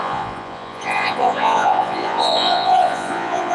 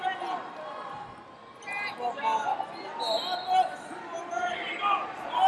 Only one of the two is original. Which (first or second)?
second